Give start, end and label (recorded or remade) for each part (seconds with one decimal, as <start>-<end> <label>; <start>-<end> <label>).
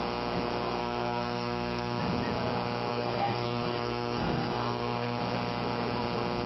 0.0-0.8 recorded; 0.8-2.0 remade; 2.0-2.9 recorded; 2.9-5.2 remade; 5.2-6.5 recorded